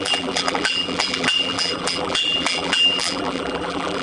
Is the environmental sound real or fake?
fake